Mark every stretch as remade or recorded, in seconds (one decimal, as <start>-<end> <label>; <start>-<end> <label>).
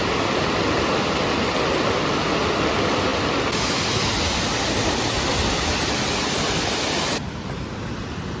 0.0-8.4 recorded